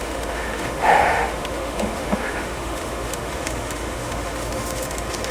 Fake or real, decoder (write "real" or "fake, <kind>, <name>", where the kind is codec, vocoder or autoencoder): fake, autoencoder, DAC-VAE